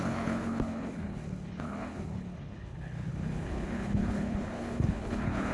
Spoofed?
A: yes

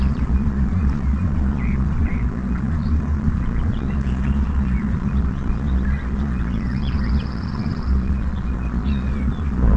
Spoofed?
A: yes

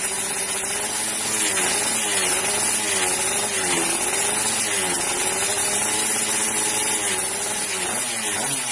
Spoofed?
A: no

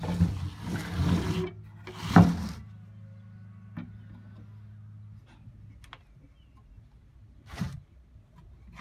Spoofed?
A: no